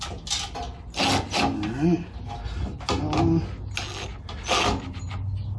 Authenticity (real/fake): real